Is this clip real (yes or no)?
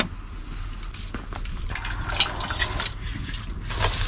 yes